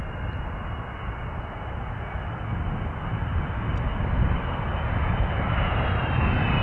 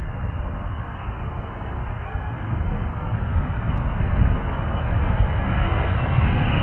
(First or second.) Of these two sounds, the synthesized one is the second